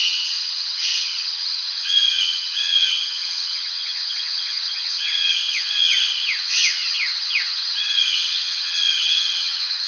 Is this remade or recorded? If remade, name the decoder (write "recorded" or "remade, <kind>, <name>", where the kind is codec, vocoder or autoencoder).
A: remade, vocoder, HiFi-GAN